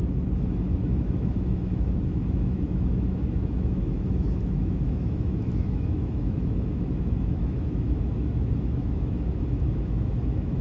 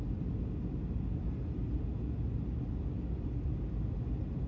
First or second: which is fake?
first